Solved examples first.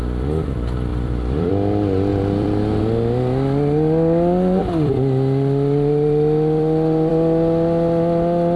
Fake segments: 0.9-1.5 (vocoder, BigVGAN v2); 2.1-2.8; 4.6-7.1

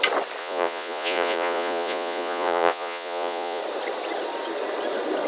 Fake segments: 0.4-3.6 (vocoder, Vocos)

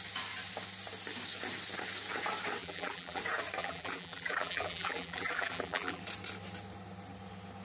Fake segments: 2.6-3.2 (vocoder, BigVGAN v2); 3.6-6.0

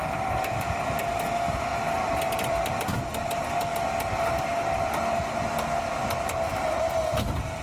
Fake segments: 0.0-1.7 (vocoder, BigVGAN v2); 2.5-3.7; 5.8-7.6

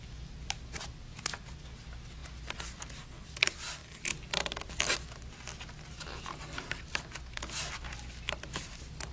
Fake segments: none

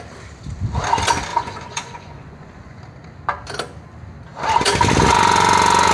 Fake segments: 1.3-2.8 (vocoder, Vocos)

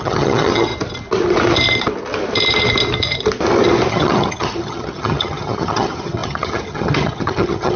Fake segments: 0.0-0.7 (vocoder, HiFi-GAN); 3.9-7.8